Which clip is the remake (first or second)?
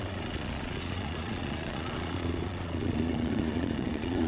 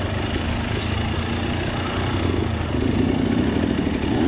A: first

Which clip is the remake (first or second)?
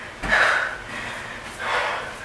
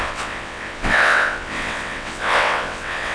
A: second